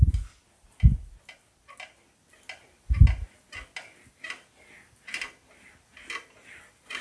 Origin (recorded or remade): recorded